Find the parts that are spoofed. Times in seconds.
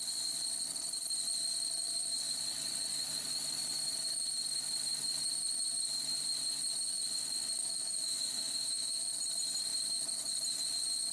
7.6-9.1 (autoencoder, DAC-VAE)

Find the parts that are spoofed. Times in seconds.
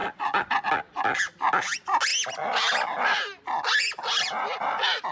none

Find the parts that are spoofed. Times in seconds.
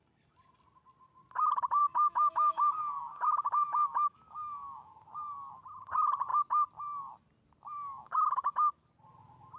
1.8-4.9 (autoencoder, DAC-VAE); 7.7-8.6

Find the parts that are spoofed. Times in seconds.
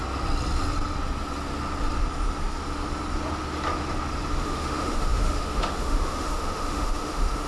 4.3-7.5 (autoencoder, DAC-VAE)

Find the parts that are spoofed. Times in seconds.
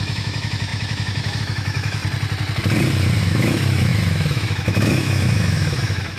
0.0-2.0 (autoencoder, DAC-VAE); 3.2-6.2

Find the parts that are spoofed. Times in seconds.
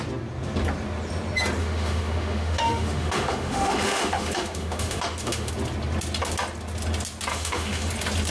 1.6-5.5 (autoencoder, DAC-VAE); 7.3-7.9